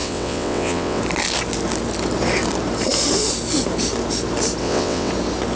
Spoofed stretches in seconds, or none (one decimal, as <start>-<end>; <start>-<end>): 0.0-1.0; 4.6-5.1